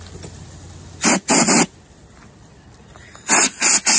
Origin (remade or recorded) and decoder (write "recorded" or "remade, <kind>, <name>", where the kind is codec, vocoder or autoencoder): recorded